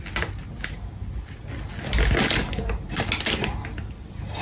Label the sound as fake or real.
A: real